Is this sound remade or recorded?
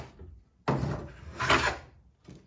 recorded